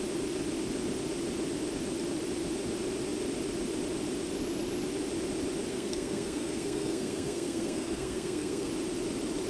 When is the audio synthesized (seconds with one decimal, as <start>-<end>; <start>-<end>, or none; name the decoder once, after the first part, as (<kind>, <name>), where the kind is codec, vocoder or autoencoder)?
5.7-8.7 (codec, SNAC)